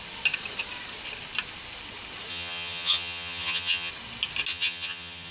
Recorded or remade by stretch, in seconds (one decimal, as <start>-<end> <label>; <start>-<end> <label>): 0.0-2.3 recorded; 2.3-3.9 remade; 3.9-4.5 recorded; 4.5-5.3 remade